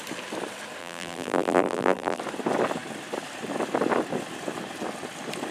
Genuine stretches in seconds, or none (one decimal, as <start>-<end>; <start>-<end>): 0.0-0.8; 2.2-5.5